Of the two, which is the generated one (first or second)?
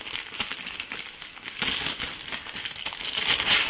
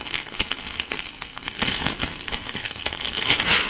second